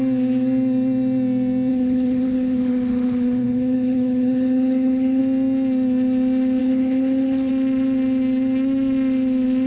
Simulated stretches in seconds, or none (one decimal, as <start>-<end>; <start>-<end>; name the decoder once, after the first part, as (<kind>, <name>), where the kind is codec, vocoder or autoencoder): 1.7-5.2 (codec, HILCodec); 6.6-7.5

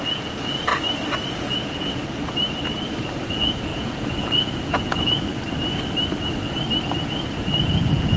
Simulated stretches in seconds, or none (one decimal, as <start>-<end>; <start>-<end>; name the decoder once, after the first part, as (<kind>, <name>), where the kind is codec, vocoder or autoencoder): 0.0-0.7 (vocoder, Vocos); 1.3-2.0; 3.3-5.3; 7.4-8.2

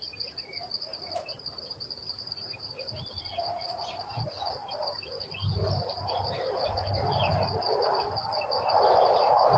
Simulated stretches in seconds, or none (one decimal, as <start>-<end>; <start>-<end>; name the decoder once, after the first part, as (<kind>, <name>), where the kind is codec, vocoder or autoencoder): 0.9-2.9 (vocoder, BigVGAN v2); 4.6-5.2

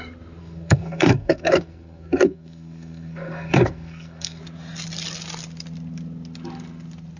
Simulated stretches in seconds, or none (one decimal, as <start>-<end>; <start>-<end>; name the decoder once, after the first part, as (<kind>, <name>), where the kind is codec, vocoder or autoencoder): 0.4-4.4 (codec, SNAC)

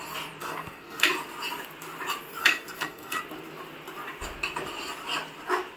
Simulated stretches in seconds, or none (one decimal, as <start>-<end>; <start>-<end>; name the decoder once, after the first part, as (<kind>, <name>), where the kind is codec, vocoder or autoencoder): 0.4-1.1 (codec, SNAC); 2.4-3.2